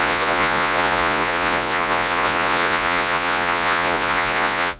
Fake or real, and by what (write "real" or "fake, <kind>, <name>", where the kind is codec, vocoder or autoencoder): fake, vocoder, Vocos